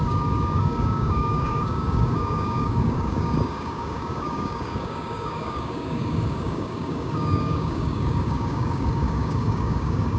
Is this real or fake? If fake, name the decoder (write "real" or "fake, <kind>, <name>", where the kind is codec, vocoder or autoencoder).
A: fake, codec, DAC